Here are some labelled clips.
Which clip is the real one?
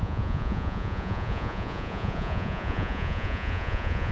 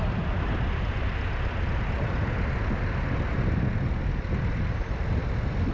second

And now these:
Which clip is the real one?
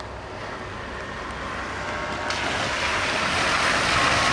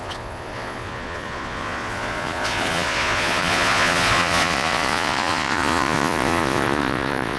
first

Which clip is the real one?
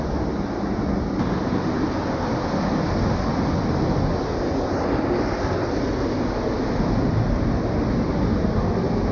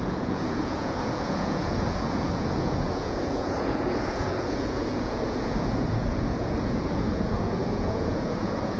first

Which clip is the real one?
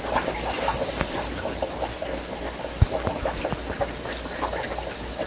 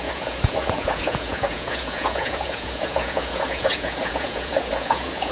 first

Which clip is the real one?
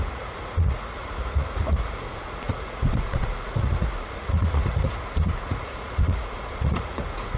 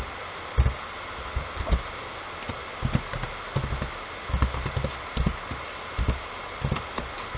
second